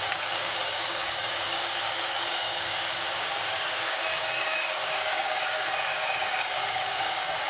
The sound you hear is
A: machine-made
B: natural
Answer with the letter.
A